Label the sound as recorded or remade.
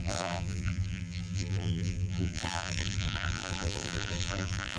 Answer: remade